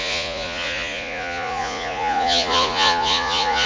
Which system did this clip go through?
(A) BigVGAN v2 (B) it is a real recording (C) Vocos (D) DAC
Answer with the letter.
C